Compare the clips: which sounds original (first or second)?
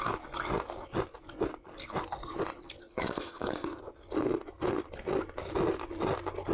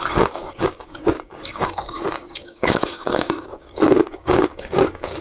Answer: first